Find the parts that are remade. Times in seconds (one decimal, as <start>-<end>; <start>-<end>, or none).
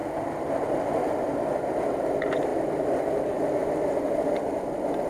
none